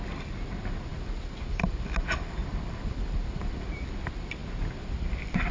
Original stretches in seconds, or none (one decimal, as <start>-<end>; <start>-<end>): 0.0-0.9; 3.9-5.5